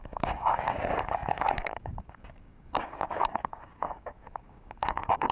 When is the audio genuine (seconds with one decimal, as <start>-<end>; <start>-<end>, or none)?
none